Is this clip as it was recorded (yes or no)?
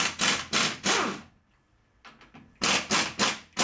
yes